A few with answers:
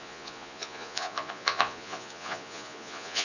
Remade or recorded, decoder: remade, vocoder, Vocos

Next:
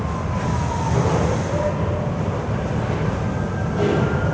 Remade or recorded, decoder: recorded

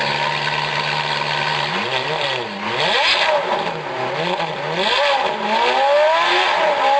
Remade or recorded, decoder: recorded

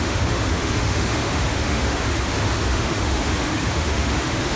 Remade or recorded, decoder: remade, autoencoder, DAC-VAE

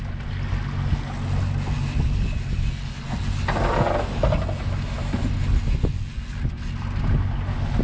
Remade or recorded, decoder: recorded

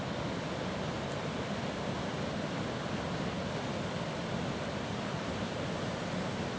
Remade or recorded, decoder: recorded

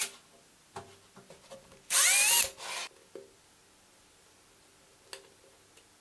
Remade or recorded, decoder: recorded